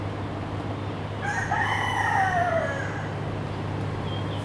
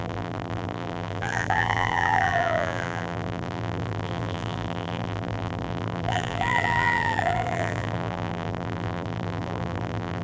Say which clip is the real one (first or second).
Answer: first